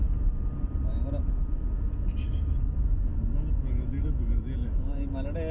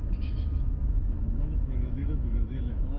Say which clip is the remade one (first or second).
second